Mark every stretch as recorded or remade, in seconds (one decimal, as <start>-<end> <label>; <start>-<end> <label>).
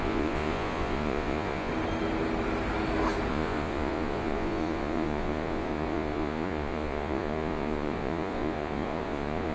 0.0-1.7 remade; 1.7-3.3 recorded; 3.3-9.5 remade